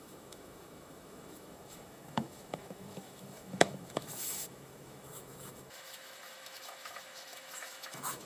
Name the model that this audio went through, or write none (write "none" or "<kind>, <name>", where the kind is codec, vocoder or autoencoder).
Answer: autoencoder, DAC-VAE